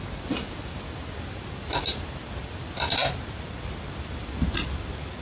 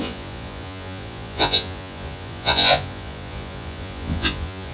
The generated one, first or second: second